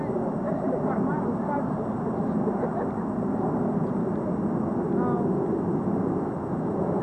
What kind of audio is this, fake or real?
real